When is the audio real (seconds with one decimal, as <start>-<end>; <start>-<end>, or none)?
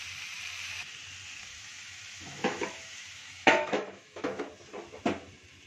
0.0-1.5; 4.4-5.7